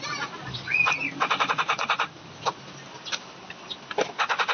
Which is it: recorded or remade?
recorded